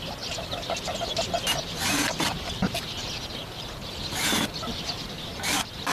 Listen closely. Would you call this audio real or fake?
real